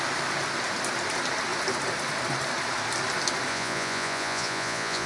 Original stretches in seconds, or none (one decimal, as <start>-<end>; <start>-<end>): 0.0-3.5